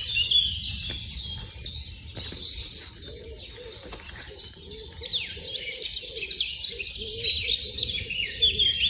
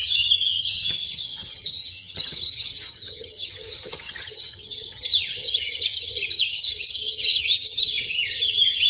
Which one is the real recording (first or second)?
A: first